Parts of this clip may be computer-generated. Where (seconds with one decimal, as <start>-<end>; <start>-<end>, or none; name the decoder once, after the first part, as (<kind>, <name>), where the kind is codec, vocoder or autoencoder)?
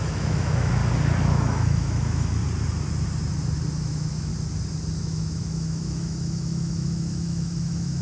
0.0-0.8 (autoencoder, DAC-VAE); 1.3-2.4; 3.8-4.3; 5.0-8.0